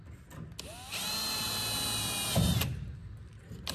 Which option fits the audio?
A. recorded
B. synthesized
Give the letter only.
A